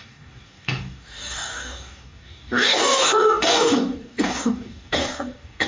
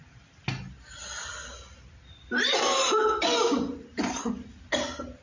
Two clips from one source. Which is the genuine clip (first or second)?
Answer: second